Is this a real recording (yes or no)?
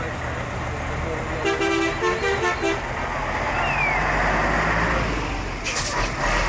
yes